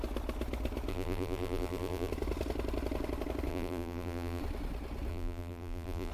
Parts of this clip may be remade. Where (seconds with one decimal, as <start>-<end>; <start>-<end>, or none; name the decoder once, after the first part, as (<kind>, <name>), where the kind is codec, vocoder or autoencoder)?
0.9-2.1 (vocoder, BigVGAN v2); 3.5-4.4; 5.1-6.1